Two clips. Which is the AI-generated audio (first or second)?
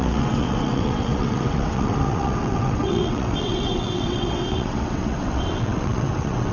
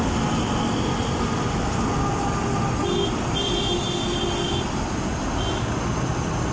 first